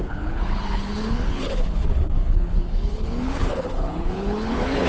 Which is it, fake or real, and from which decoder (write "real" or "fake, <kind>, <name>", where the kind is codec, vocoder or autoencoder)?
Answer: fake, codec, HILCodec